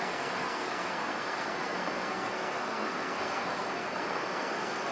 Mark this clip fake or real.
fake